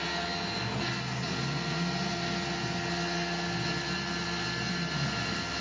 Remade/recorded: recorded